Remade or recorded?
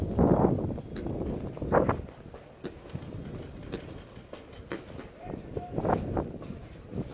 recorded